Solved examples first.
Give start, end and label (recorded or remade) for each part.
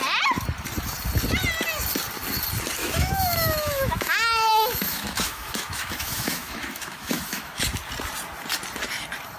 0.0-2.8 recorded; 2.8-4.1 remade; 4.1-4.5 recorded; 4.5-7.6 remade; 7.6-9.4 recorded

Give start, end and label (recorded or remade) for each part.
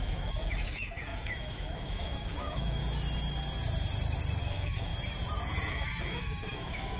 0.0-2.8 remade; 2.8-4.4 recorded; 4.4-4.9 remade; 4.9-5.7 recorded; 5.7-7.0 remade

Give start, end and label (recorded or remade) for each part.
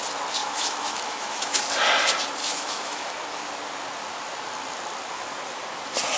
0.0-0.4 recorded; 0.4-1.6 remade; 1.6-2.4 recorded; 2.4-3.1 remade; 3.1-6.2 recorded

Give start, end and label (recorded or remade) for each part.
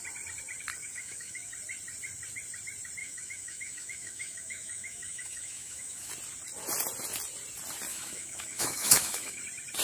0.0-0.8 recorded; 0.8-1.5 remade; 1.5-3.0 recorded; 3.0-6.1 remade; 6.1-7.9 recorded; 7.9-9.4 remade; 9.4-9.8 recorded